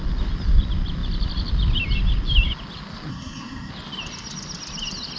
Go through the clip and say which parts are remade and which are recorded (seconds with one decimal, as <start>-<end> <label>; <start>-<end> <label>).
0.0-3.1 recorded; 3.1-3.7 remade; 3.7-5.2 recorded